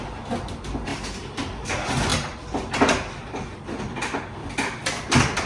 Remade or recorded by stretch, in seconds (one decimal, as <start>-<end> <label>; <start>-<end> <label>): 0.0-0.9 recorded; 0.9-1.7 remade; 1.7-4.4 recorded; 4.4-5.5 remade